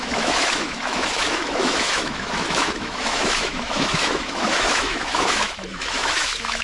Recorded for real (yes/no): no